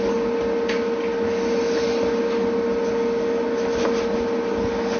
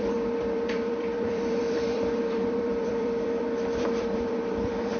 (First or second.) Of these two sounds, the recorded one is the first